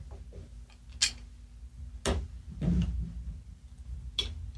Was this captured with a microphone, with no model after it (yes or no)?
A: yes